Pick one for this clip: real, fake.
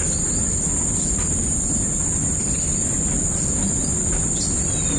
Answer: real